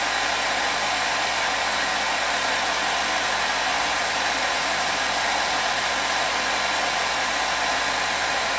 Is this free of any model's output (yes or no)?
yes